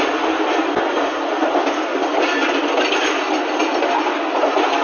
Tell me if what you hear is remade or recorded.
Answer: recorded